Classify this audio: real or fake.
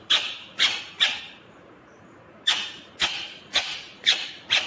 fake